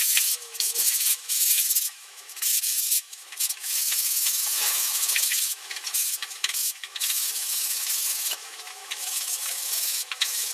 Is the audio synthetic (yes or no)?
yes